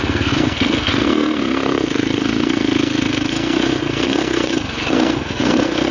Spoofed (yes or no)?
yes